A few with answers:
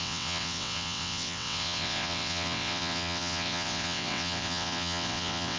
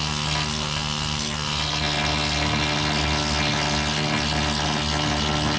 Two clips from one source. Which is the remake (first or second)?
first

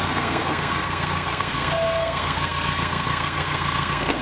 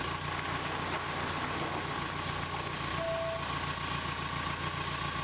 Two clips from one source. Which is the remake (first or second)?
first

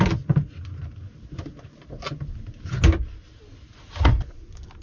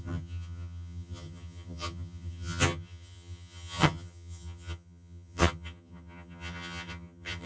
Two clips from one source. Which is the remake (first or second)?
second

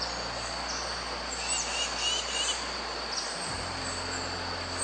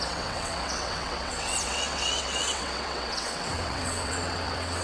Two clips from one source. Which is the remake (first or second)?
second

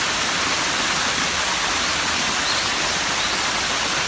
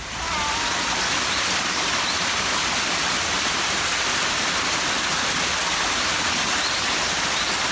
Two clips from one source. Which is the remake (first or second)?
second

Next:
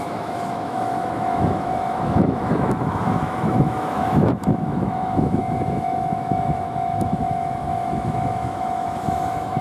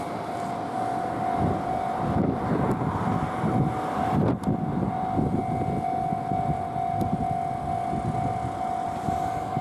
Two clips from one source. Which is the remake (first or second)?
first